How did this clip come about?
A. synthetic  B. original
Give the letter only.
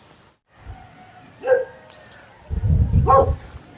B